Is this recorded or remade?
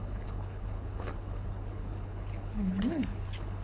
remade